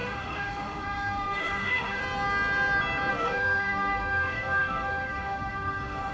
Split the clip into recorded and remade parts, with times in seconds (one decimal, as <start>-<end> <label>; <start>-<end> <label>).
0.0-2.0 remade; 2.0-3.1 recorded; 3.1-6.1 remade